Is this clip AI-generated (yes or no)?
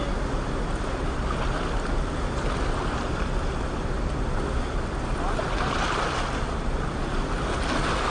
no